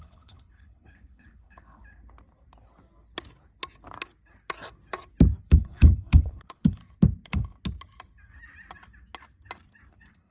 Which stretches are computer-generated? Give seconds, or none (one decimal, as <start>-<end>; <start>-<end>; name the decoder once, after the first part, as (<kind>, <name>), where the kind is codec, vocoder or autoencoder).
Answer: 0.0-1.8 (codec, HILCodec); 5.4-6.8; 9.9-10.3